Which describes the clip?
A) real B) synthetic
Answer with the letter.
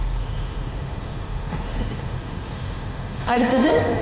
B